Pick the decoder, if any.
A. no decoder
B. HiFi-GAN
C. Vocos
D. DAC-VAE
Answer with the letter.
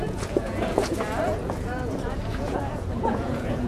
C